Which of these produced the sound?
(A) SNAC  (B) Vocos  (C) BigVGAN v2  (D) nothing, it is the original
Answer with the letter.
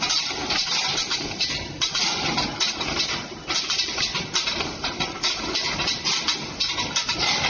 C